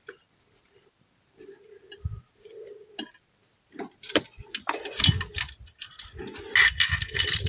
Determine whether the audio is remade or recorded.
recorded